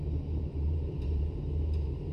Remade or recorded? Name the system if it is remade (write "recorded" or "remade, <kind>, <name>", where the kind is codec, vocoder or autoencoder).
remade, vocoder, BigVGAN v2